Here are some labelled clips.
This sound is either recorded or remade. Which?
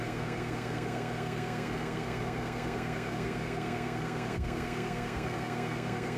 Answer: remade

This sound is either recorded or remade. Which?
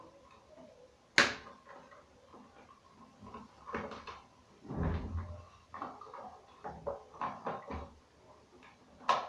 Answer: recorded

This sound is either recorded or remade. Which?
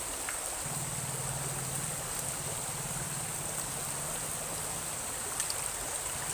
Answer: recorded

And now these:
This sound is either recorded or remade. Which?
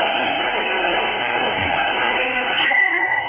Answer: remade